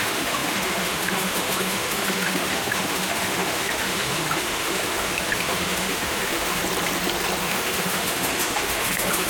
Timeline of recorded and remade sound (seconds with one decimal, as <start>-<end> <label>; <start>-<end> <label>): 0.0-6.6 remade; 6.6-7.4 recorded; 7.4-9.3 remade